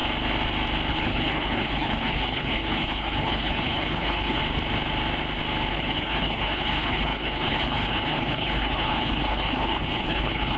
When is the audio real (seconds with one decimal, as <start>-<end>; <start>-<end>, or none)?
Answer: 0.0-0.9; 4.4-5.7